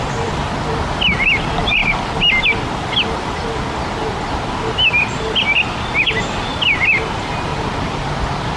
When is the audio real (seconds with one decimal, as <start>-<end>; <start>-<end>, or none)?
0.0-6.5; 7.0-7.5; 8.2-8.6